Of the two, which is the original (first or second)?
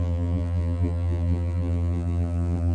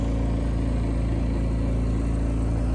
second